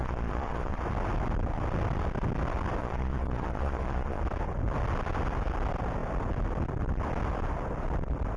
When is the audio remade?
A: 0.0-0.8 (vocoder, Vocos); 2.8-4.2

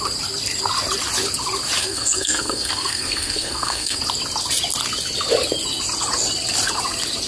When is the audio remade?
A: 1.8-4.0 (codec, SNAC)

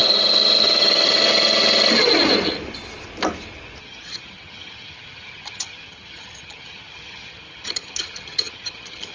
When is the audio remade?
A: 3.8-9.1 (vocoder, HiFi-GAN)